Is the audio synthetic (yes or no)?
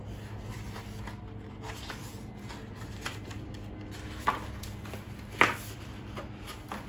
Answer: no